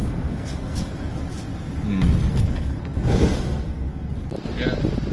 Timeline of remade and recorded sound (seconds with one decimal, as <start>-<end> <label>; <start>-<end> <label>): 0.0-1.1 remade; 1.1-2.3 recorded; 2.3-4.1 remade; 4.1-5.1 recorded